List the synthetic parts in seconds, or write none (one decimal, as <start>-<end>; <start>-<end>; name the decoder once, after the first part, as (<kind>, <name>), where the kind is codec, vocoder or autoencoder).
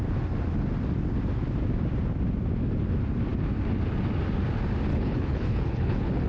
4.9-6.3 (codec, HILCodec)